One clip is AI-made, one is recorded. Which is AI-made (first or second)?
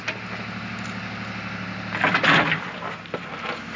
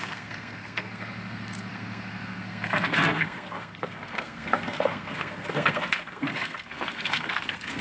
second